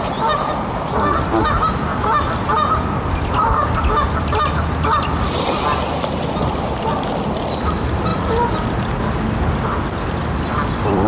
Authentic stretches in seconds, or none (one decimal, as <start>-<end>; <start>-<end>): 0.0-1.9; 4.3-8.1; 8.9-10.5